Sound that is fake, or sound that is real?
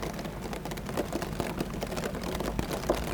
real